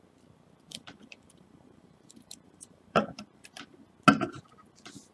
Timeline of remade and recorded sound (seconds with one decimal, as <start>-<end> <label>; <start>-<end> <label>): 0.0-0.7 recorded; 0.7-3.8 remade; 3.8-5.1 recorded